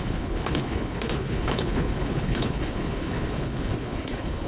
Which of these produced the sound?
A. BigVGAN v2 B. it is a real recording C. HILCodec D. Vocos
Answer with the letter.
C